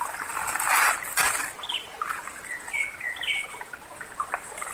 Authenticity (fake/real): real